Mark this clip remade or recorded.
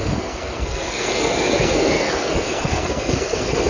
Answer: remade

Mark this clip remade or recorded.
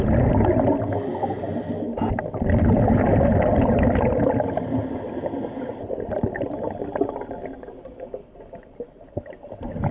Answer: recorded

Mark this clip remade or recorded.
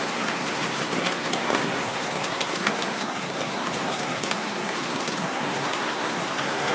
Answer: remade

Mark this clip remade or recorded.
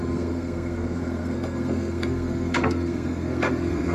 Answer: remade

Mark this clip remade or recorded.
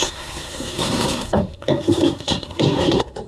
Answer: remade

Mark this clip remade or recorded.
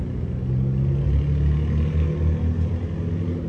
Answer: recorded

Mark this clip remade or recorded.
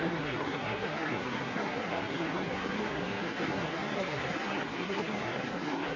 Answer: remade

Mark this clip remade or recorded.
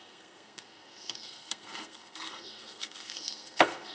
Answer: remade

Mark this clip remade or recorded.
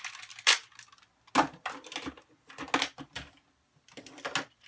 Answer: recorded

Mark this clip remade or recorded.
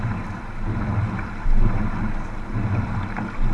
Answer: recorded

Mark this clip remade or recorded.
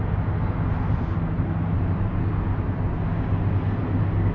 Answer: recorded